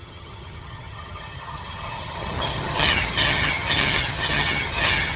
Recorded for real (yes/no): no